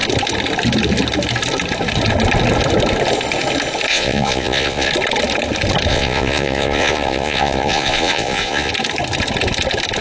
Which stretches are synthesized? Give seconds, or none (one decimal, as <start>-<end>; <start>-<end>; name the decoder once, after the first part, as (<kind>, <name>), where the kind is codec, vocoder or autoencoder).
3.9-4.9 (vocoder, Vocos); 5.9-8.7